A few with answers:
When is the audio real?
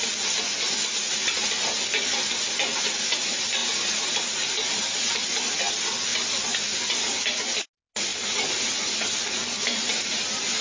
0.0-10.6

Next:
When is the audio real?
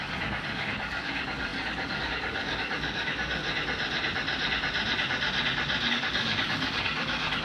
3.4-5.9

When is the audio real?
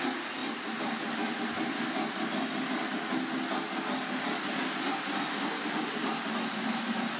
0.0-7.2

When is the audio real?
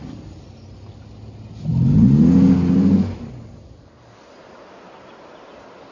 0.0-5.9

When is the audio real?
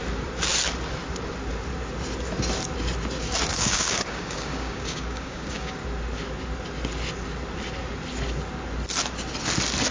0.0-3.5; 5.8-9.9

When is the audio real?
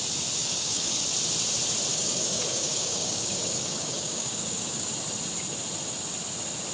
0.0-0.4; 1.0-1.9; 4.9-6.7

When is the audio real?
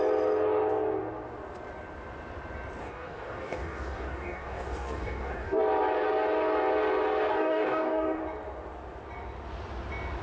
0.0-2.8; 5.6-7.3; 8.2-10.2